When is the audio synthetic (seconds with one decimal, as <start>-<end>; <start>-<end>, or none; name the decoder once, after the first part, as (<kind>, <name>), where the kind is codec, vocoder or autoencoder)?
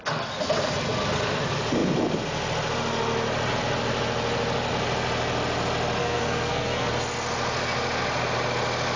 6.0-6.9 (codec, SNAC)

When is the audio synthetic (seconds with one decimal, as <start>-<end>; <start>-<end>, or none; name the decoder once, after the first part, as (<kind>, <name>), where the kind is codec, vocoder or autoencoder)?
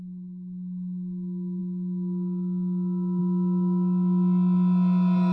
none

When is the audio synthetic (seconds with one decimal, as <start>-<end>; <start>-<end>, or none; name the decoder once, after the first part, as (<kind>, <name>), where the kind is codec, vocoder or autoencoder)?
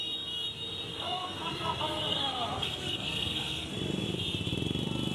0.9-3.7 (codec, SNAC)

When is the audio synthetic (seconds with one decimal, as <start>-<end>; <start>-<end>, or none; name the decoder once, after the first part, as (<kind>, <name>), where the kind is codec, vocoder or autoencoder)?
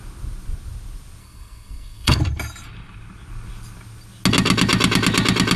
1.2-2.2 (codec, SNAC)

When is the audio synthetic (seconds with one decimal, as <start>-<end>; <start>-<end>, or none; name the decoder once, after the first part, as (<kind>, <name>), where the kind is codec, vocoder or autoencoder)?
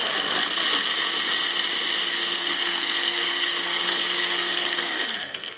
2.2-5.6 (codec, SNAC)